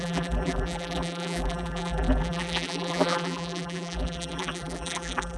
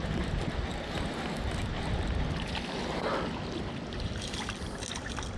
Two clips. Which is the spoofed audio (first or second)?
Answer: first